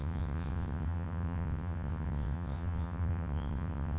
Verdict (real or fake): fake